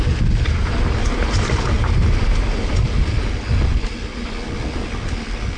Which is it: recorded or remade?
recorded